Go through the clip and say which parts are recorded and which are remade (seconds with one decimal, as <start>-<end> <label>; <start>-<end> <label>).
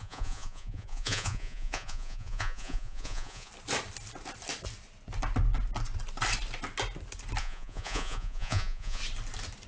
0.0-3.5 remade; 3.5-7.4 recorded; 7.4-9.0 remade; 9.0-9.7 recorded